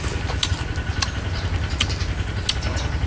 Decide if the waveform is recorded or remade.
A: recorded